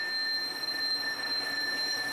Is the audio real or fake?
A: real